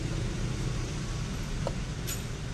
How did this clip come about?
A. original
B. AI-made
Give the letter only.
A